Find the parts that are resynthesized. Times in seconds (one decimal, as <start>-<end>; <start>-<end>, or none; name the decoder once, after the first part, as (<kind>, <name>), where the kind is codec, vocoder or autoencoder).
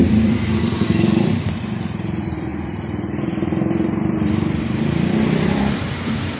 0.0-6.4 (vocoder, BigVGAN v2)